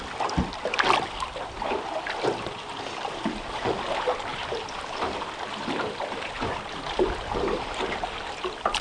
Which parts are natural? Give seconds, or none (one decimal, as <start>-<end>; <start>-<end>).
0.0-8.8